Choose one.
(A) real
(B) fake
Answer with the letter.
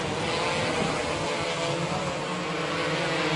A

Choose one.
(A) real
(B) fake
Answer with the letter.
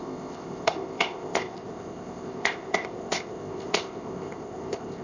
B